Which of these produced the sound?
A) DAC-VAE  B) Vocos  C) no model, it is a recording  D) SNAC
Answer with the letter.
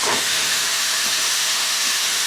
A